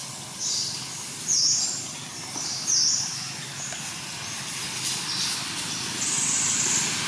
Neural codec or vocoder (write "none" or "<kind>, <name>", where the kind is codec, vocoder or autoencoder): none